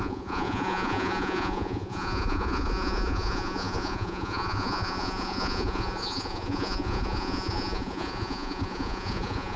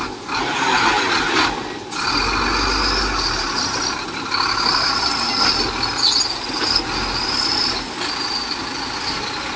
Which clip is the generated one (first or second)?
first